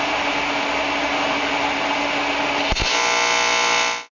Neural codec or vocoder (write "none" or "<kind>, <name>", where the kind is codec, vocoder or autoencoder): none